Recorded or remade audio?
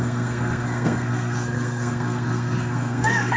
remade